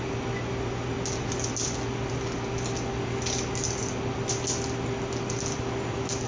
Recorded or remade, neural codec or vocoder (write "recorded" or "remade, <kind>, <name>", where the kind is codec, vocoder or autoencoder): recorded